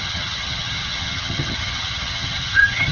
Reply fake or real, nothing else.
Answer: fake